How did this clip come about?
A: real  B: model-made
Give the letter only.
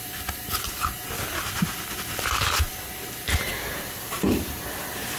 A